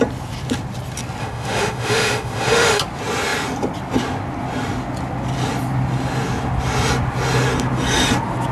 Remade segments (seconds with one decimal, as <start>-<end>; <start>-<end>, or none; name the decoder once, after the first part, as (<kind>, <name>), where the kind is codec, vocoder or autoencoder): 1.2-2.8 (autoencoder, DAC-VAE)